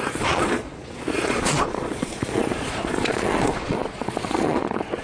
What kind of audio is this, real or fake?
fake